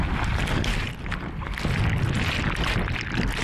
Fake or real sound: real